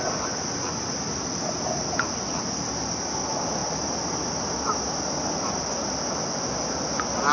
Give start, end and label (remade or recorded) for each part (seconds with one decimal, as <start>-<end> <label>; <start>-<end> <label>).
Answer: 0.0-7.3 recorded